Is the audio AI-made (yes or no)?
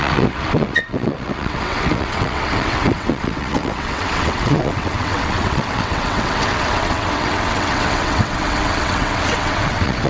yes